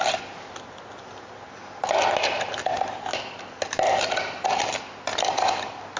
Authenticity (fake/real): real